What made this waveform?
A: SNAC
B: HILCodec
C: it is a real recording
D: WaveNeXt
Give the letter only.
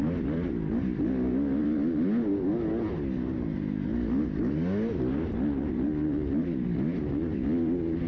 C